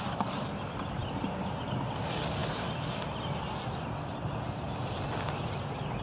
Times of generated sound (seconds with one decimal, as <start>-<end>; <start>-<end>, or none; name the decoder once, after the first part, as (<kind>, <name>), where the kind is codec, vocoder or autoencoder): none